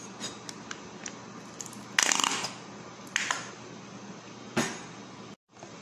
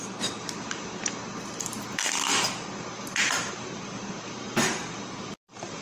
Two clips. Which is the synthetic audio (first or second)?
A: second